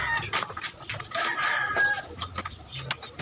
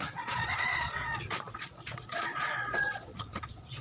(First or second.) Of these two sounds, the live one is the first